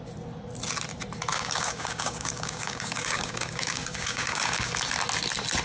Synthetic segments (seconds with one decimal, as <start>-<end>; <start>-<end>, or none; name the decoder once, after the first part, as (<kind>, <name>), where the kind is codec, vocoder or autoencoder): 1.3-4.7 (codec, DAC)